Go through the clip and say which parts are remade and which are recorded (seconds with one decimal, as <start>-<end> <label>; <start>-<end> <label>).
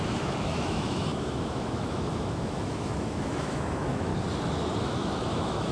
0.0-4.1 remade; 4.1-4.8 recorded; 4.8-5.7 remade